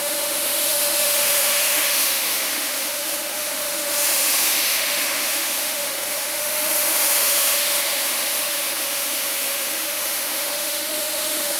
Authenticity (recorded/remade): remade